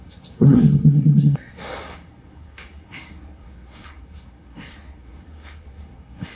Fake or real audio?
fake